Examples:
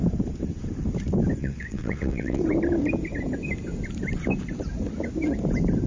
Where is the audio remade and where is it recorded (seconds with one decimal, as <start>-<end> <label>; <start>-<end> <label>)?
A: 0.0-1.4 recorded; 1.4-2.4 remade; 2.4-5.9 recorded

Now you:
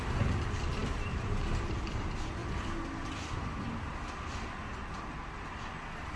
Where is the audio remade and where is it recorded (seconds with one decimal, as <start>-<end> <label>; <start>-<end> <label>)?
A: 0.0-2.4 remade; 2.4-6.2 recorded

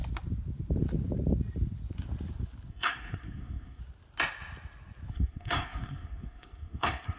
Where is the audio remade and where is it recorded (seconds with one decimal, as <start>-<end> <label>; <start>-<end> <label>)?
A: 0.0-2.7 recorded; 2.7-3.8 remade; 3.8-5.1 recorded; 5.1-7.2 remade

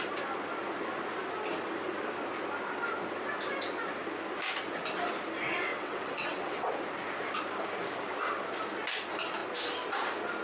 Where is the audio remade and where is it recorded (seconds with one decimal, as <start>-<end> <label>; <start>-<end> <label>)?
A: 0.0-5.7 recorded; 5.7-6.7 remade; 6.7-10.4 recorded

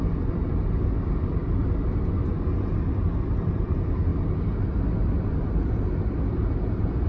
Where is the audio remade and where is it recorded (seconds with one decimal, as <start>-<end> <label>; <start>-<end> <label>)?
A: 0.0-7.1 recorded

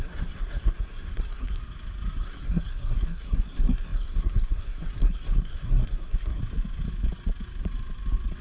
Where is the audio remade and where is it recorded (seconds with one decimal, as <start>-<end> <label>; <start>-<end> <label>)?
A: 0.0-1.6 remade; 1.6-2.2 recorded; 2.2-6.4 remade; 6.4-8.4 recorded

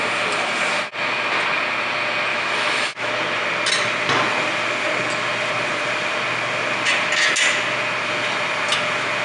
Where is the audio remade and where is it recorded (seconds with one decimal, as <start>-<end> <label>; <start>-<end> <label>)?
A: 0.0-2.3 recorded; 2.3-3.1 remade; 3.1-9.2 recorded